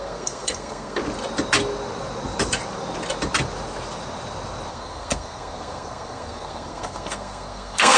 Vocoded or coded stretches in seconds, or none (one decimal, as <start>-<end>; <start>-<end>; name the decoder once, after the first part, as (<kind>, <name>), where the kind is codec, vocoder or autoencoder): 0.0-1.0 (codec, SNAC); 4.7-8.0